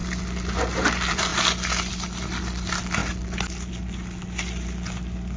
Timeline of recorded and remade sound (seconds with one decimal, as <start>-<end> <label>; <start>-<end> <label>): 0.0-0.6 recorded; 0.6-3.0 remade; 3.0-3.7 recorded; 3.7-5.4 remade